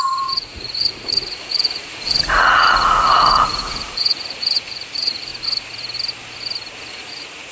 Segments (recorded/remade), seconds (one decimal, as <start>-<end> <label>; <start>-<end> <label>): 0.0-5.3 remade; 5.3-6.9 recorded; 6.9-7.5 remade